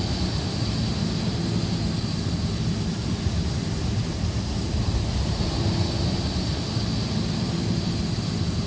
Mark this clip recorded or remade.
recorded